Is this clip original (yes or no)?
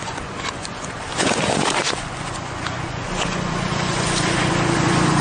no